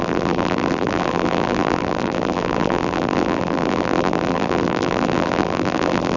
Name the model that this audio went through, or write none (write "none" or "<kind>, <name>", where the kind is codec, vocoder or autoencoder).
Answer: vocoder, BigVGAN v2